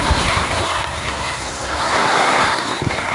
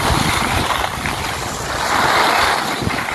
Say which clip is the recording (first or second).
second